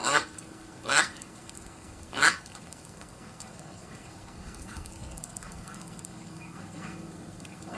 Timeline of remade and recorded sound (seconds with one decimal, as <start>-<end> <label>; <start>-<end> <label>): 0.0-7.8 remade